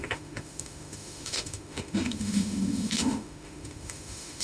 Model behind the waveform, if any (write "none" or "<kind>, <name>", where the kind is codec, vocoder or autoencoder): autoencoder, DAC-VAE